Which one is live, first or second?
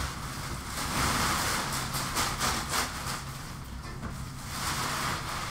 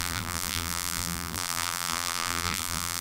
first